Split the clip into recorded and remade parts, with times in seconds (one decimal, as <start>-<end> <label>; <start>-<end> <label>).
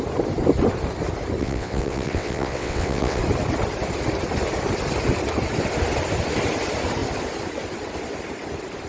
0.0-1.4 recorded; 1.4-3.2 remade; 3.2-8.9 recorded